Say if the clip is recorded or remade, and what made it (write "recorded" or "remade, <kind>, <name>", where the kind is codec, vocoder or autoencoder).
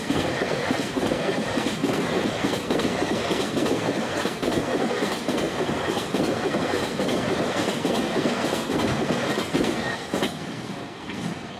remade, codec, SNAC